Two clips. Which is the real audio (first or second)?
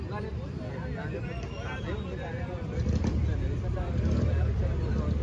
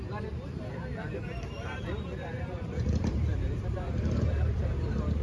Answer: first